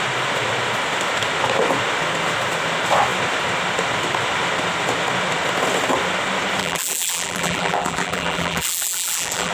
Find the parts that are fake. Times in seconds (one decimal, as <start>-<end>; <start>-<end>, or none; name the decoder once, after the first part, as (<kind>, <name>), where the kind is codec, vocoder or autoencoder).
6.6-9.5 (vocoder, BigVGAN v2)